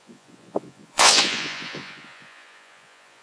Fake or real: fake